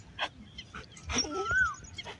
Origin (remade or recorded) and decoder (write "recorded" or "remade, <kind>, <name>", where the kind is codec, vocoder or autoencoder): recorded